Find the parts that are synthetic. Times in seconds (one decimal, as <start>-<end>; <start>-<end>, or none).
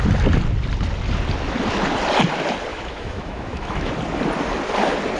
2.7-3.9